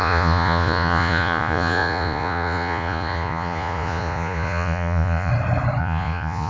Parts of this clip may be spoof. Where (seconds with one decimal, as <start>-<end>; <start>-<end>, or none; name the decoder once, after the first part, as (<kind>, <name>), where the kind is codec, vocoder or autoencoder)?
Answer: 0.0-5.3 (vocoder, Vocos); 5.8-6.5